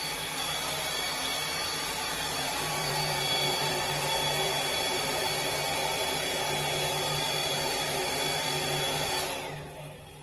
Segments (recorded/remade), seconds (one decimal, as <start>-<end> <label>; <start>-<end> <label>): 0.0-1.3 recorded; 1.3-5.5 remade; 5.5-7.4 recorded; 7.4-8.1 remade; 8.1-10.2 recorded